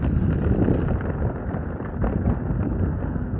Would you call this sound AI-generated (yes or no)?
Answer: no